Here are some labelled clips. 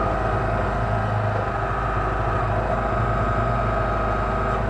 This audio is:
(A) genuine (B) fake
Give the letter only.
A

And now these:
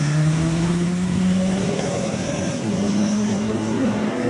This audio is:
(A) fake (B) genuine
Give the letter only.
A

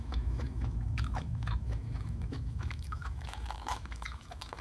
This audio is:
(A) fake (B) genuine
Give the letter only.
A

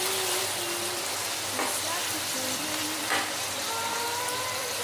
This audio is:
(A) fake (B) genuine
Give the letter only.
B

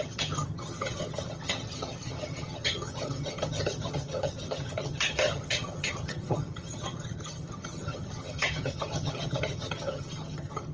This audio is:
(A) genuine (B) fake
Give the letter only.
B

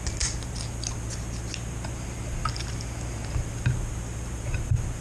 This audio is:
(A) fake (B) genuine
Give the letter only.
B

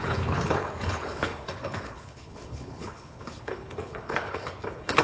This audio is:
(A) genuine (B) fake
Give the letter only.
B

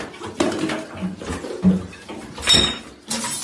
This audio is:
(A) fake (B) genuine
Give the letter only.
B